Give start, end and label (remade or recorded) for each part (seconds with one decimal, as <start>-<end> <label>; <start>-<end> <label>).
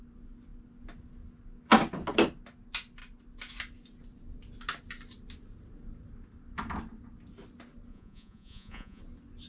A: 0.0-7.9 recorded; 7.9-9.0 remade; 9.0-9.5 recorded